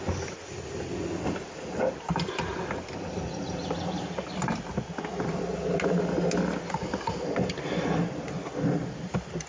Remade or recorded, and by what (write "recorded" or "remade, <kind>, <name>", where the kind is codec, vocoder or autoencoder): recorded